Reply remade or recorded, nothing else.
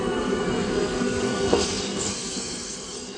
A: remade